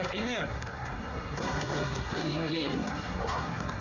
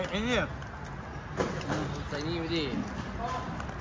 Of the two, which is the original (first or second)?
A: second